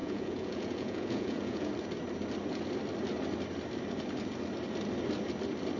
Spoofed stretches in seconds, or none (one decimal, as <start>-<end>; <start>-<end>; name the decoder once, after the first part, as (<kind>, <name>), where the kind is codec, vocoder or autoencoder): 0.0-1.7 (vocoder, Vocos)